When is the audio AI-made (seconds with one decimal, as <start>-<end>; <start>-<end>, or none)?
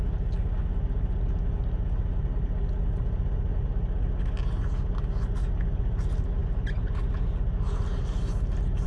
none